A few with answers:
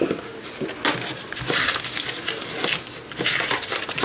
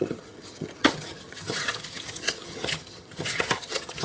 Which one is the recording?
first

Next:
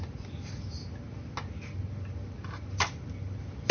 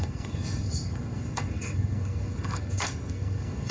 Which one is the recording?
first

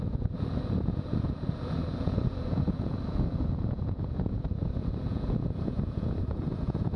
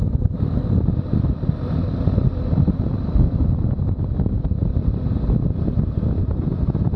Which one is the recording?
second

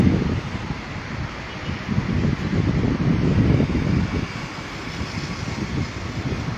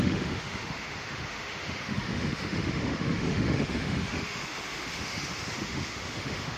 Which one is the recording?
first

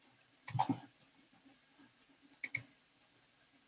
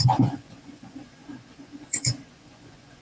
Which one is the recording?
first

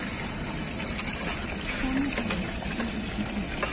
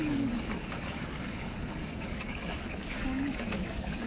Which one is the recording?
first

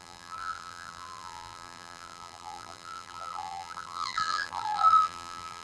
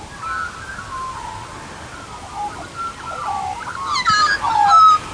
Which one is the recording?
second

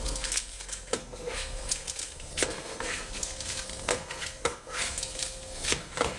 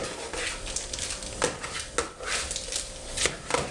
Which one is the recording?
second